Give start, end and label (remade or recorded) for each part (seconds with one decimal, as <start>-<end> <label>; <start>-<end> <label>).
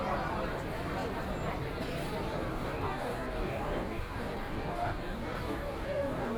0.0-2.5 recorded; 2.5-6.4 remade